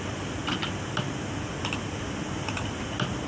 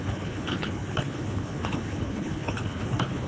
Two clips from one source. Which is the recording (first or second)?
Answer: first